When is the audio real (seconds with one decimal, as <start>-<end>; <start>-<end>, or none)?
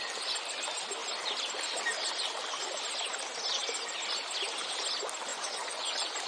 0.0-5.3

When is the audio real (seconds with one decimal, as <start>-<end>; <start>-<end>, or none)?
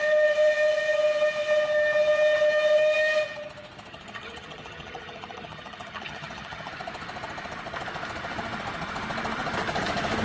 0.0-3.9; 6.7-10.2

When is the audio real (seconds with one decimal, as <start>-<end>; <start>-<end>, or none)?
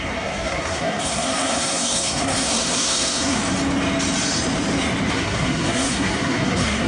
3.4-5.1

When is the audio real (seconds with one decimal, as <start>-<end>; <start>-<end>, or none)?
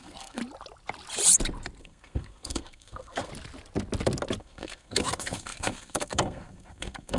0.4-1.8; 3.3-4.4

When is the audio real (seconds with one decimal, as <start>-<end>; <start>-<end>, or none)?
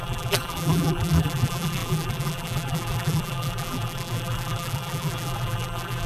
none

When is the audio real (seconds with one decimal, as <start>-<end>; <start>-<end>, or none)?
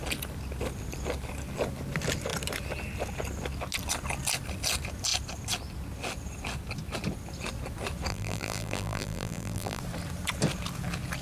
0.0-8.1; 9.8-11.2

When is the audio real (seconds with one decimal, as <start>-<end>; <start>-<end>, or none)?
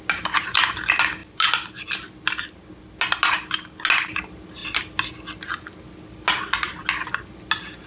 0.0-7.9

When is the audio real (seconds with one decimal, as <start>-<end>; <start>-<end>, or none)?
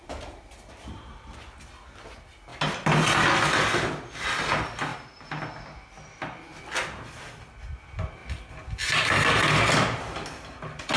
0.0-4.9; 5.4-11.0